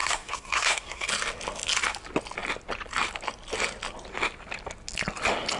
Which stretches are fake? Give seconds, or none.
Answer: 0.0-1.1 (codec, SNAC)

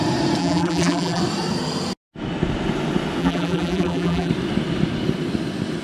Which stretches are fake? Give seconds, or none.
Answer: 0.4-1.2 (vocoder, BigVGAN v2); 3.2-4.3